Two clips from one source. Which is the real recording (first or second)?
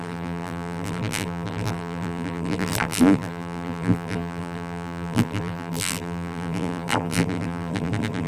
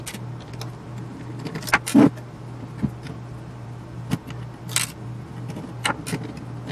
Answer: second